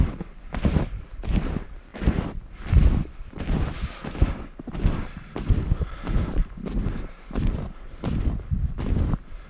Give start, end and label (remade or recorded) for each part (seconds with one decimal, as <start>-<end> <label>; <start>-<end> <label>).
0.0-9.5 remade